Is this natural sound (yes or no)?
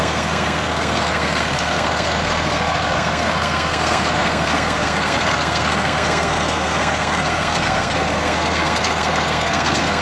no